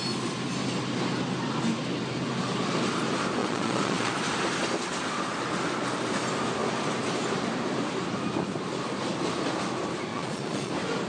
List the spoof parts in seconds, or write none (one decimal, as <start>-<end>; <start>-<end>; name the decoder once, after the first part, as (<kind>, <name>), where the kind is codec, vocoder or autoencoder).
3.4-4.1 (vocoder, Vocos); 10.1-10.7